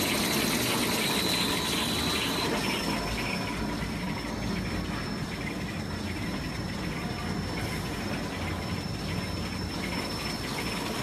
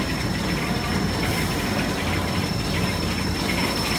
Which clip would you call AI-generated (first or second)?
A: second